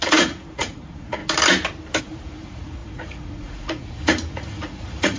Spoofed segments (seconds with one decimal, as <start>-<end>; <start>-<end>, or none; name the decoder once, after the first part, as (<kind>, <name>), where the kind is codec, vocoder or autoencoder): 0.0-1.2 (vocoder, Vocos); 2.0-5.2